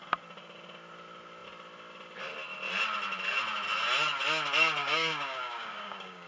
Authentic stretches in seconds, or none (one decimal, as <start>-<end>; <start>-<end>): 0.0-4.8